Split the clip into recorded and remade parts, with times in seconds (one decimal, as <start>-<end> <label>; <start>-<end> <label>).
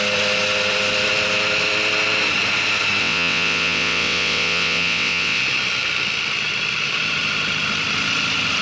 0.0-3.0 recorded; 3.0-5.4 remade; 5.4-8.6 recorded